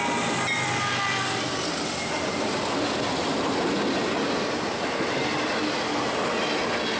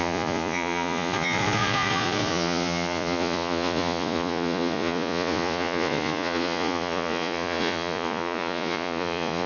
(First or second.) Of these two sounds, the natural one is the first